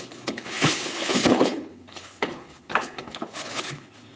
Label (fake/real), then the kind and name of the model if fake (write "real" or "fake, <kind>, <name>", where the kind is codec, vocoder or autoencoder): fake, codec, HILCodec